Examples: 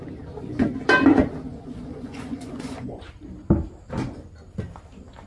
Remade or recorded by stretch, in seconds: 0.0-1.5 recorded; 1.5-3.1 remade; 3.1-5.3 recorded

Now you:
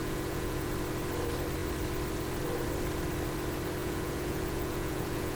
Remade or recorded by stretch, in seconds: 0.0-0.7 remade; 0.7-3.8 recorded; 3.8-5.4 remade

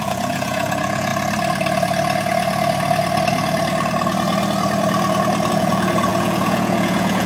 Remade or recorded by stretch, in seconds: 0.0-1.1 remade; 1.1-5.5 recorded; 5.5-7.3 remade

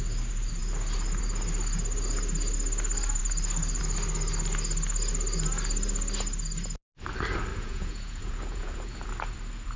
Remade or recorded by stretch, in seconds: 0.0-7.5 recorded; 7.5-9.1 remade; 9.1-9.8 recorded